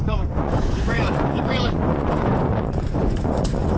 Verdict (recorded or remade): remade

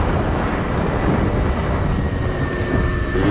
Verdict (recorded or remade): recorded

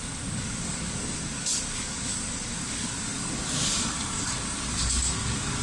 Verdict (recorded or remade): remade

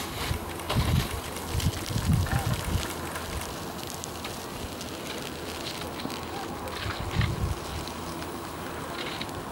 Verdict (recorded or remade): recorded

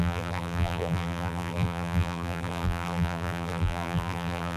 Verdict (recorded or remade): remade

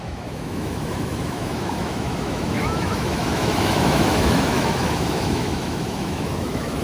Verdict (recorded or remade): remade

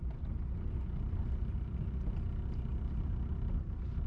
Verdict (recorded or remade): recorded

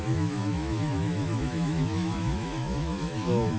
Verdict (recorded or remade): remade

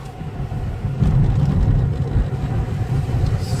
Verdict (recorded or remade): recorded